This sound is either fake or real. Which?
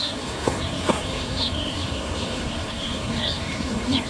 fake